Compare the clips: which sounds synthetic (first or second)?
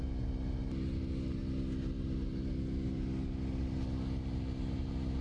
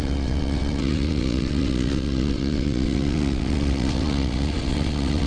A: second